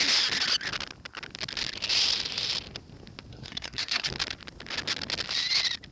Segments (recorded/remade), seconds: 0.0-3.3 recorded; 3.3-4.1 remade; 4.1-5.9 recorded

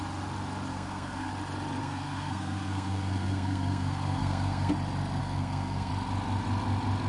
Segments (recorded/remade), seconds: 0.0-0.7 recorded; 0.7-1.3 remade; 1.3-1.8 recorded; 1.8-4.7 remade; 4.7-5.2 recorded; 5.2-5.9 remade; 5.9-7.1 recorded